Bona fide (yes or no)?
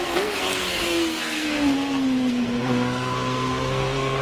no